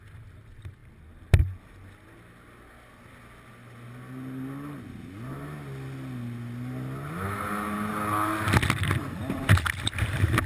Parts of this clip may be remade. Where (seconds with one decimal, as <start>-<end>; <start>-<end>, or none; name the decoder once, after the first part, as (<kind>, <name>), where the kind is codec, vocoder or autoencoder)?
none